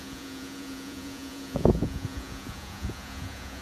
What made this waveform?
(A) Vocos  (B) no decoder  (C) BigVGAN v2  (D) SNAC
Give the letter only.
A